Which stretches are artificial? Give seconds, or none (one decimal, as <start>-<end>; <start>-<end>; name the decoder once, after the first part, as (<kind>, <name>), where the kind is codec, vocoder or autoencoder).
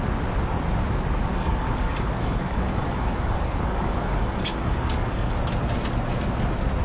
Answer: 1.3-5.4 (codec, DAC)